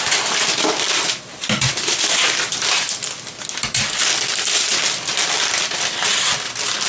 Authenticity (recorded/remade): recorded